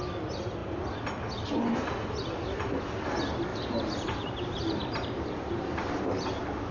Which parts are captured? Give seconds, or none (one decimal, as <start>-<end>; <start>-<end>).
0.0-3.5